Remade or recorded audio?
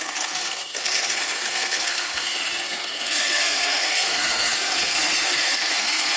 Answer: remade